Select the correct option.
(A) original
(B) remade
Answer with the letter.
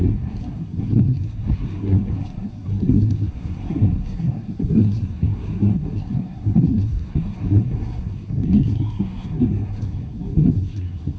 B